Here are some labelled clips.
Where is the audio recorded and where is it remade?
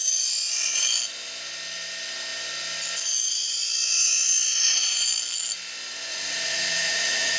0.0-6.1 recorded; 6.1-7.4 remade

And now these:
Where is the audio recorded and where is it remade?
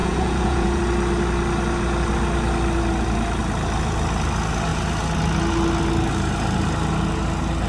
0.0-0.8 remade; 0.8-7.7 recorded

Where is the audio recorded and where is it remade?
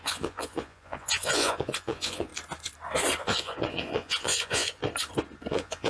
0.0-2.3 remade; 2.3-3.2 recorded; 3.2-4.8 remade; 4.8-5.5 recorded; 5.5-5.9 remade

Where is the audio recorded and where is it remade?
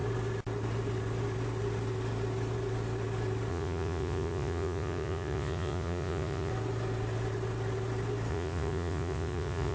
0.0-3.5 recorded; 3.5-6.5 remade; 6.5-8.3 recorded; 8.3-9.7 remade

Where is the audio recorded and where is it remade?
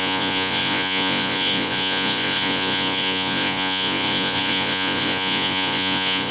0.0-6.3 remade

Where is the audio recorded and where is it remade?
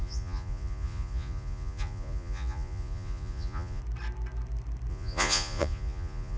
0.0-3.8 remade; 3.8-4.9 recorded; 4.9-6.4 remade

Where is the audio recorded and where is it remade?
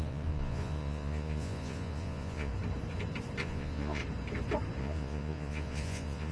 0.0-2.5 remade; 2.5-3.4 recorded; 3.4-4.0 remade; 4.0-4.8 recorded; 4.8-6.3 remade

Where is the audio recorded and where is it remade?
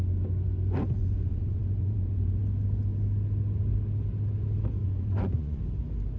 0.0-1.0 recorded; 1.0-2.4 remade; 2.4-4.8 recorded; 4.8-5.6 remade; 5.6-6.2 recorded